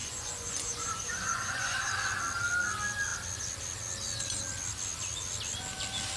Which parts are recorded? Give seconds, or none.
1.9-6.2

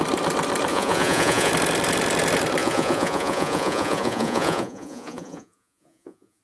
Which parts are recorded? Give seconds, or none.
0.0-0.7; 1.5-2.6

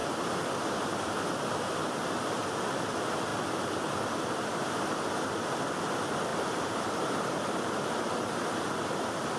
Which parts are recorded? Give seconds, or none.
1.6-3.3; 5.8-6.3; 8.4-9.4